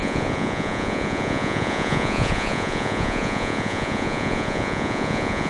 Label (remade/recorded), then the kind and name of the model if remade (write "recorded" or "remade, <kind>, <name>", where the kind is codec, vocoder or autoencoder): remade, vocoder, Vocos